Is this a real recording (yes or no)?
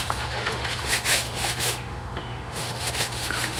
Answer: no